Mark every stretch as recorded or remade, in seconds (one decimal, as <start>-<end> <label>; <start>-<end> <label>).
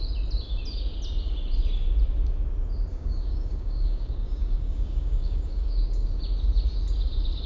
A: 0.0-2.9 recorded; 2.9-6.2 remade; 6.2-7.5 recorded